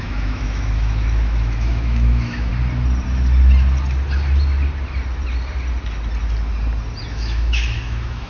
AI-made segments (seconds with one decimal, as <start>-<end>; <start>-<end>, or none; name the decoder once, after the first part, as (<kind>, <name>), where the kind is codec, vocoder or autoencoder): 0.0-2.5 (autoencoder, DAC-VAE); 7.1-8.3